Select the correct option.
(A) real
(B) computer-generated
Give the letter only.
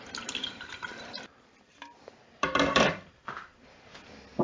B